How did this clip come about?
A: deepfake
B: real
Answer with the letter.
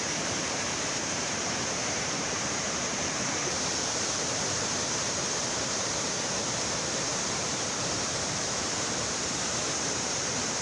A